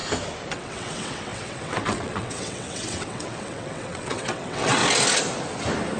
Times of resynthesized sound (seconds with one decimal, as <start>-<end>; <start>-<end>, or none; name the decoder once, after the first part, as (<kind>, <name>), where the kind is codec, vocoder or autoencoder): 0.5-4.8 (vocoder, WaveNeXt)